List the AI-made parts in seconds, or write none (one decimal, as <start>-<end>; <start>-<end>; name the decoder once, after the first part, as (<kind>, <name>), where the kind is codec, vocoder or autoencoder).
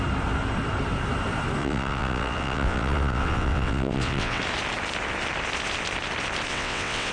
1.6-4.4 (vocoder, WaveNeXt); 6.5-7.1